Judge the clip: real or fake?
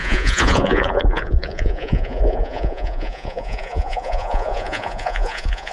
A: fake